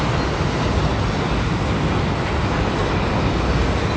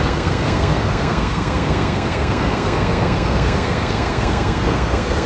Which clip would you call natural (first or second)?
first